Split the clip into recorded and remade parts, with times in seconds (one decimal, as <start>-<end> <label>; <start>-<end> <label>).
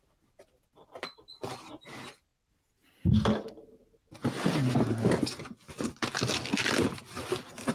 0.0-7.7 recorded